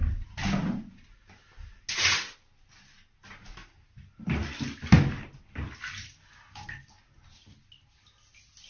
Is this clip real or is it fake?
real